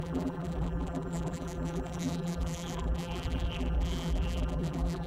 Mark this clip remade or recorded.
remade